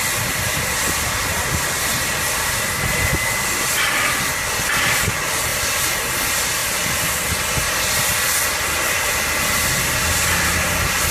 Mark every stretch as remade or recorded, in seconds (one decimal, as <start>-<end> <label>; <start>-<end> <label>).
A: 0.0-5.5 recorded; 5.5-6.0 remade; 6.0-6.6 recorded; 6.6-7.2 remade; 7.2-11.1 recorded